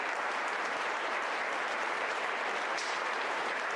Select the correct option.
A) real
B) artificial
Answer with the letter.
B